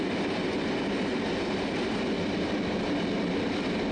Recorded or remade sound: recorded